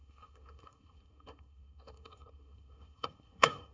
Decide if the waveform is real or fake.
fake